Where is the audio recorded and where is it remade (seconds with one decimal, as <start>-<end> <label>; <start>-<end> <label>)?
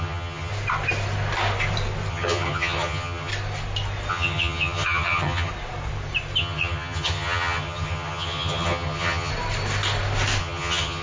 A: 0.0-0.5 remade; 0.5-2.1 recorded; 2.1-3.3 remade; 3.3-4.1 recorded; 4.1-5.5 remade; 5.5-6.4 recorded; 6.4-9.3 remade; 9.3-10.4 recorded; 10.4-11.0 remade